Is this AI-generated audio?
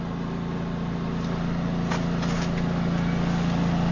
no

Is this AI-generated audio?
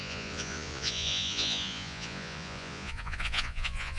yes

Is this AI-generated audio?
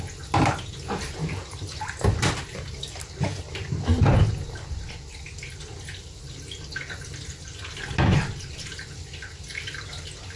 no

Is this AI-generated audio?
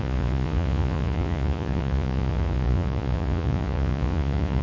yes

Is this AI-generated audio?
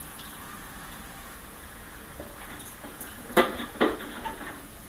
yes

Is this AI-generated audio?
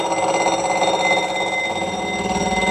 no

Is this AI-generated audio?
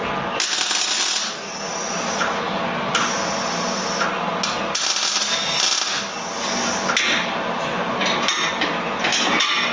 no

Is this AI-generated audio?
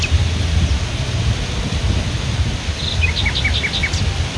no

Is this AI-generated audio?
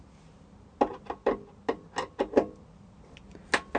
no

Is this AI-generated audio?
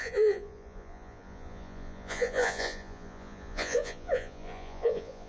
yes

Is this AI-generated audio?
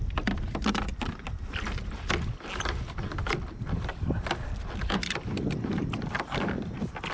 no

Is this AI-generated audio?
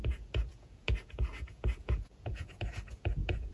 yes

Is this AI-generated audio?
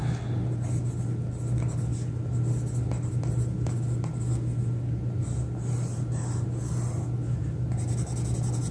no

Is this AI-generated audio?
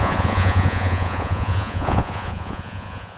yes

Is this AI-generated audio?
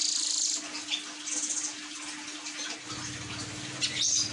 no